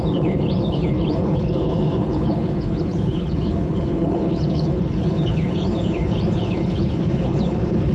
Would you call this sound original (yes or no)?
no